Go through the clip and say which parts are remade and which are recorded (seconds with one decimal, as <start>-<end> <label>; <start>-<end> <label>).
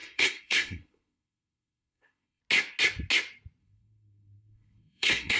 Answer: 0.0-2.4 remade; 2.4-3.6 recorded; 3.6-5.4 remade